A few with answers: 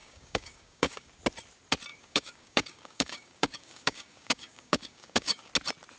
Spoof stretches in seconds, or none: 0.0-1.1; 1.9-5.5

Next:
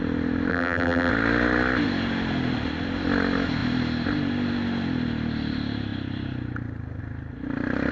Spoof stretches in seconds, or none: 0.5-1.1

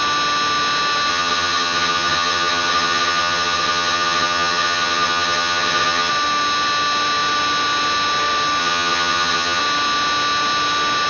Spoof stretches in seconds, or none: 1.1-6.1; 8.6-9.6

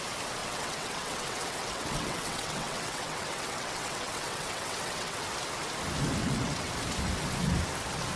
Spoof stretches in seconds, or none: 0.4-5.3; 6.2-6.7

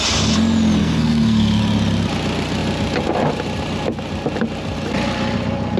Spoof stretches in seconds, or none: 0.8-1.6

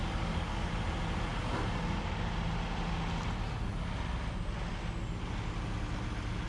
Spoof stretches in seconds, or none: 0.0-0.7